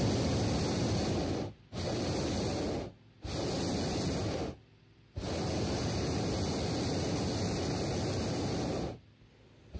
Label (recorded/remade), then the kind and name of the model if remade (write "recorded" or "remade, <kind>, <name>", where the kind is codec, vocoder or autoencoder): recorded